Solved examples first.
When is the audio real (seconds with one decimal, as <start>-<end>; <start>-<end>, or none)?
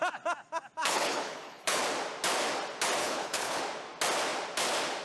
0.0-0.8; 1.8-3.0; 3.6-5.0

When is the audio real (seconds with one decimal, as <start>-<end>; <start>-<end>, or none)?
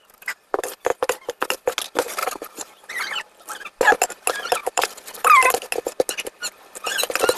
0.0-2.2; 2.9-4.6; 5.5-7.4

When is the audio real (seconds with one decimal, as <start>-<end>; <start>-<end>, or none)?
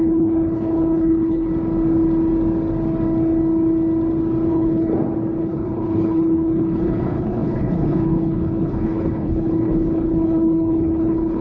1.5-4.5; 4.9-5.4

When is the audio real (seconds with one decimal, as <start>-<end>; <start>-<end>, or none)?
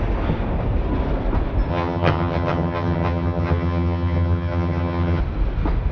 0.0-1.7; 5.2-5.9